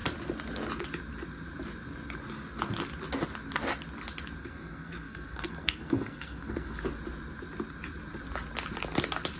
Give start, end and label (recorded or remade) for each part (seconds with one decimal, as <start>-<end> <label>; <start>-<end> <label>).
0.0-4.4 recorded; 4.4-6.8 remade; 6.8-9.4 recorded